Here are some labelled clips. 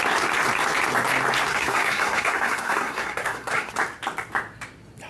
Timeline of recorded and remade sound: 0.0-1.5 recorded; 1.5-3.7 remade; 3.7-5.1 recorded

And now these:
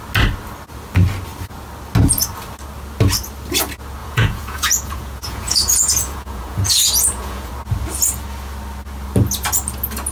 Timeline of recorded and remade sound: 0.0-4.0 recorded; 4.0-7.5 remade; 7.5-10.1 recorded